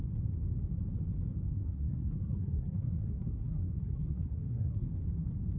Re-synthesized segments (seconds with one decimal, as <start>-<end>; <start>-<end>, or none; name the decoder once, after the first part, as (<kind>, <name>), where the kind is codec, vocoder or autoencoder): 1.5-4.9 (codec, SNAC)